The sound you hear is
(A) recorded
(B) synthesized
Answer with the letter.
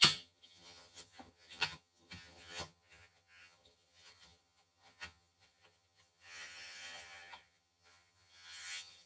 B